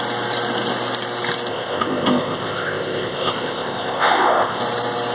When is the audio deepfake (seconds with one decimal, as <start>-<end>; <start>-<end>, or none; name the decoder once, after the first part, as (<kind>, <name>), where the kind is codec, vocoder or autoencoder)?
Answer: 1.5-4.6 (codec, ZipCodec)